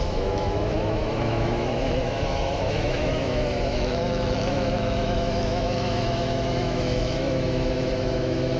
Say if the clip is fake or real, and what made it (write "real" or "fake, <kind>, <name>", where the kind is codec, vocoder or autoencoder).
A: fake, autoencoder, DAC-VAE